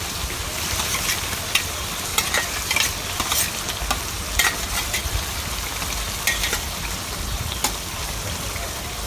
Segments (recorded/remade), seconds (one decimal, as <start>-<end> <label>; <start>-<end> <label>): 0.0-9.1 recorded